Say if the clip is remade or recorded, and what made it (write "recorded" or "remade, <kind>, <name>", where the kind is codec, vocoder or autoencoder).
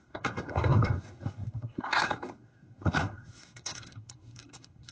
remade, codec, SNAC